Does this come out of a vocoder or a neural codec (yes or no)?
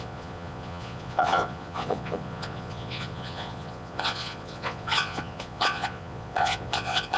yes